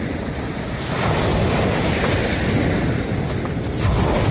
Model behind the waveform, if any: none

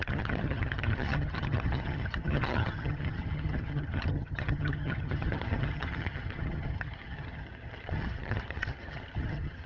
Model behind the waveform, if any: vocoder, HiFi-GAN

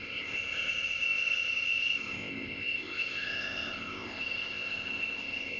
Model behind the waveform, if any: codec, ZipCodec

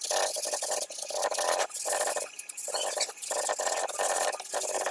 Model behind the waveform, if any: none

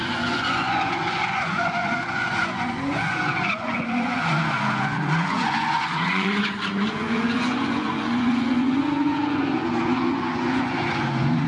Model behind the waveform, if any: vocoder, Vocos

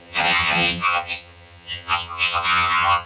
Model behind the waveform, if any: vocoder, HiFi-GAN